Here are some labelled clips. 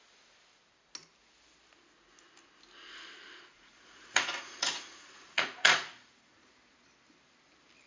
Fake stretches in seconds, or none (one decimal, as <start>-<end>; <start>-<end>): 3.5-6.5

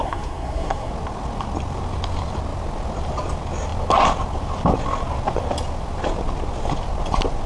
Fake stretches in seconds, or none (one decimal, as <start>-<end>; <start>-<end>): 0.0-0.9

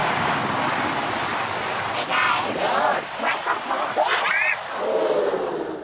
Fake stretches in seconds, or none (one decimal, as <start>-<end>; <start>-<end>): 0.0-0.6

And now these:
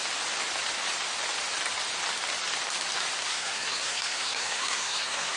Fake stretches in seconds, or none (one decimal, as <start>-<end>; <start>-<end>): 3.2-5.4